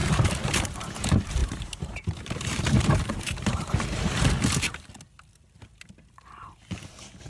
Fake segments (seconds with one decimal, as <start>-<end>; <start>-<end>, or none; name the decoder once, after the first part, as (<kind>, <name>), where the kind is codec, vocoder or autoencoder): 0.0-0.9 (vocoder, BigVGAN v2); 1.4-4.9